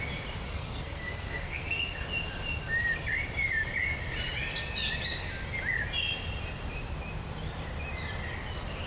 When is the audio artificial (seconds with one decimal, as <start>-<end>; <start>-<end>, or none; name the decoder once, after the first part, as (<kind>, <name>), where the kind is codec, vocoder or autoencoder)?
0.5-2.0 (codec, SNAC)